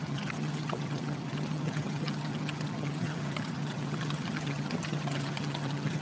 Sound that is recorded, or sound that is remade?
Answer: remade